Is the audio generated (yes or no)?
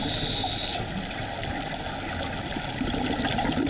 no